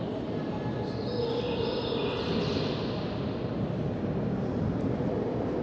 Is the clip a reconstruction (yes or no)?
no